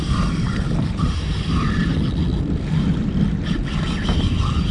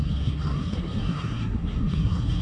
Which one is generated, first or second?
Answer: second